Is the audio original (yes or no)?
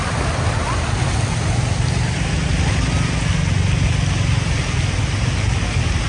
yes